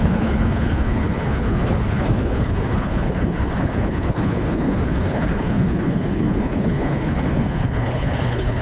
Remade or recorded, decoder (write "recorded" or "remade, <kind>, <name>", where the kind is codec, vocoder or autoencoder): remade, codec, HILCodec